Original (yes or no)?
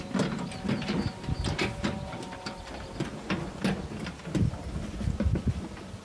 yes